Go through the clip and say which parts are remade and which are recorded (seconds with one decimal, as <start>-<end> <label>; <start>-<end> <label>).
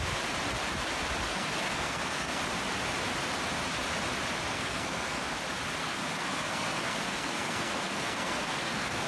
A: 0.0-1.3 recorded; 1.3-2.4 remade; 2.4-4.5 recorded; 4.5-5.2 remade; 5.2-5.8 recorded; 5.8-9.1 remade